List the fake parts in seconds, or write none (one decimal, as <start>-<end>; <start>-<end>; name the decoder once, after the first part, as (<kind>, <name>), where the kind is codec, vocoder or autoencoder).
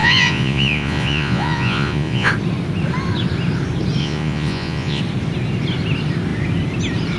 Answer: 0.0-2.3 (vocoder, Vocos); 4.0-5.0